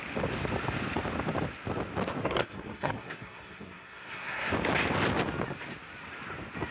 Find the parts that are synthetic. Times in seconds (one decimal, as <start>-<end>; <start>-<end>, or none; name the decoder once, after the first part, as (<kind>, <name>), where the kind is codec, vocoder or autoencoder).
2.2-4.5 (codec, SNAC)